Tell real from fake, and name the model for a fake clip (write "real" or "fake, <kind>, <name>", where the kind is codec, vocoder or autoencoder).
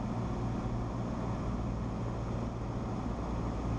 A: real